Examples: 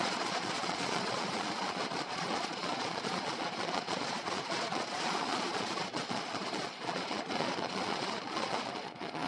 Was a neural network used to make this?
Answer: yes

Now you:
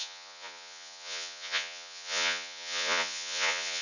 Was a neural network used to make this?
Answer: yes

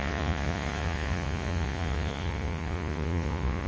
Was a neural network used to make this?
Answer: yes